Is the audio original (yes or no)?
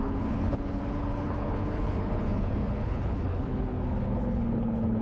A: no